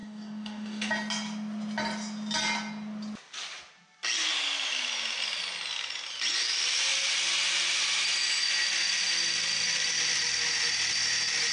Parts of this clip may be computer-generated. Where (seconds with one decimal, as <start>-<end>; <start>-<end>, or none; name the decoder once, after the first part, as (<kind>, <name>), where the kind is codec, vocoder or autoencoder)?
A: 0.0-0.9 (codec, DAC)